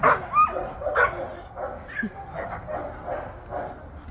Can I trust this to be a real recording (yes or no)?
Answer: yes